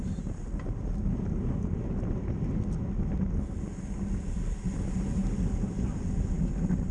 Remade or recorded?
recorded